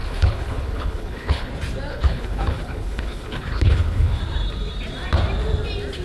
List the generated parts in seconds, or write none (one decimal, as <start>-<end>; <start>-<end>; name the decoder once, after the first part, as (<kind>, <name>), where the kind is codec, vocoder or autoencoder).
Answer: 0.0-1.5 (codec, HILCodec); 1.9-4.2